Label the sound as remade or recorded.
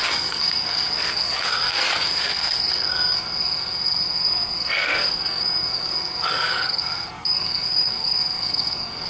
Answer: remade